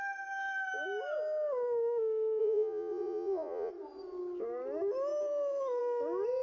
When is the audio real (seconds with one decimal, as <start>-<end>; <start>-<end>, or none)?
0.0-2.4; 3.7-6.4